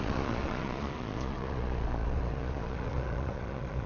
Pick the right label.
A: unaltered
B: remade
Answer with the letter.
B